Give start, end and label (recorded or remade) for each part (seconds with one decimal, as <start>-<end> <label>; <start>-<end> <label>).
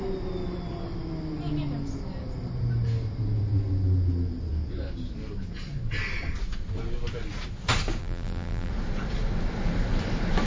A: 0.0-8.0 recorded; 8.0-8.7 remade; 8.7-10.5 recorded